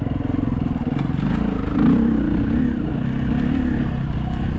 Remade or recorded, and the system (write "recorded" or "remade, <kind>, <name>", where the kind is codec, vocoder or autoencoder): recorded